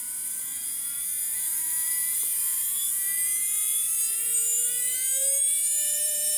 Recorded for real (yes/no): no